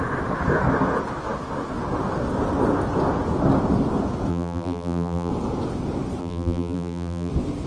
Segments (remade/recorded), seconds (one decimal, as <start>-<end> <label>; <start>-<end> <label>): 0.0-4.3 recorded; 4.3-5.3 remade; 5.3-6.2 recorded; 6.2-7.3 remade; 7.3-7.7 recorded